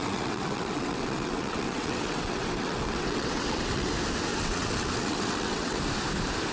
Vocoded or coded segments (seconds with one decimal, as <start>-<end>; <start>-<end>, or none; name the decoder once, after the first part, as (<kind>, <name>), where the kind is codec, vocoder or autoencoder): 0.0-3.9 (vocoder, WaveNeXt); 4.3-5.8